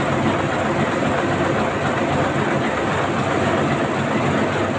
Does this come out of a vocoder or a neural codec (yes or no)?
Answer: no